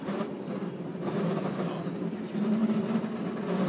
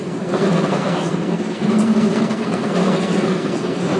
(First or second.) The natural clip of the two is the first